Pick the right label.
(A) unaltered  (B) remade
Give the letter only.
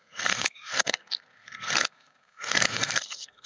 B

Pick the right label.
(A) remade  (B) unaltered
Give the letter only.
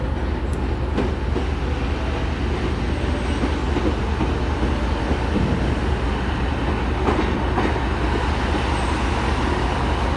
B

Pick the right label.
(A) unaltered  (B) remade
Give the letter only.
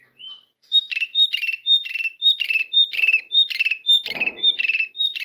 B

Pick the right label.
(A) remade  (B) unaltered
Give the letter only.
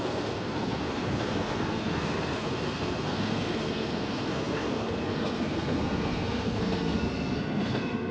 A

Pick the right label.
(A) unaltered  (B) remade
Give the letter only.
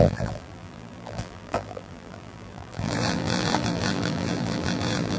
B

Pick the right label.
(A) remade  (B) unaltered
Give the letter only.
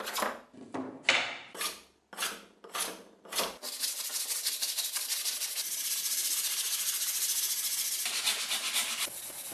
B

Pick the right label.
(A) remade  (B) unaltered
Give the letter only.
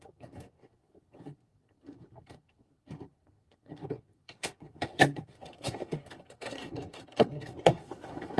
A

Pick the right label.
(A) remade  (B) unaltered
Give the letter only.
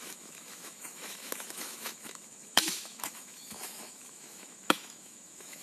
A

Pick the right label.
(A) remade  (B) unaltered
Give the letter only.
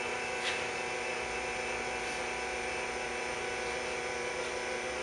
B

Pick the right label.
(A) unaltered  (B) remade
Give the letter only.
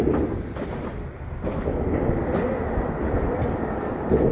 A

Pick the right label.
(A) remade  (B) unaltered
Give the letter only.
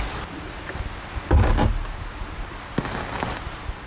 B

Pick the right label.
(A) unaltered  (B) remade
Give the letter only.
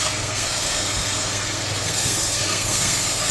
B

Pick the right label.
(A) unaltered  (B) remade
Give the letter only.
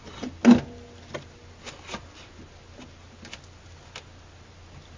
A